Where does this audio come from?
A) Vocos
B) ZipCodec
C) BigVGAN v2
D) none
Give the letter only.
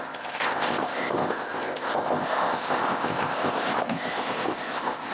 B